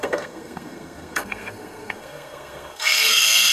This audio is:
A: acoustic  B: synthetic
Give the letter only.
B